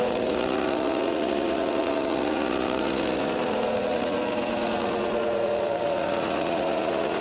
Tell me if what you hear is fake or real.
fake